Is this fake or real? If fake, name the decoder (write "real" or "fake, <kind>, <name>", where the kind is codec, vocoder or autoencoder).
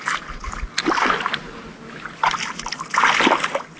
real